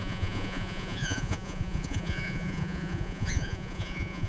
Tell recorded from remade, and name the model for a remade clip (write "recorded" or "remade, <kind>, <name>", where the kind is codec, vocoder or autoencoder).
remade, vocoder, Vocos